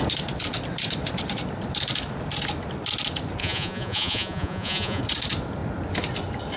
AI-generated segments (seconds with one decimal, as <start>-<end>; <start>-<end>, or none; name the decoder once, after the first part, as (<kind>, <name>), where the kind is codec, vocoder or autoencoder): 3.4-5.0 (vocoder, Vocos)